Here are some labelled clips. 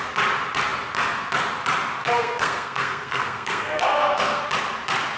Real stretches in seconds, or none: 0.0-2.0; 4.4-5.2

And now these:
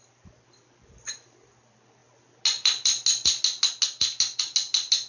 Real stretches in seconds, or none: 0.0-5.1

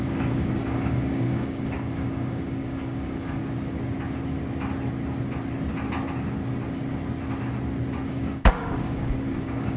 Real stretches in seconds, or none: 3.4-8.1

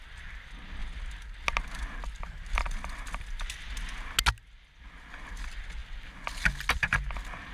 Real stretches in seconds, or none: 0.0-7.5

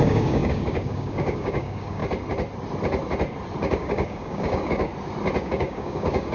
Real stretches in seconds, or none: 2.0-3.6; 4.9-5.4

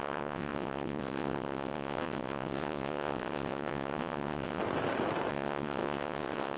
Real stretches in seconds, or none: 4.6-5.3

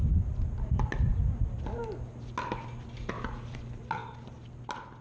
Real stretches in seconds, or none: 0.0-5.0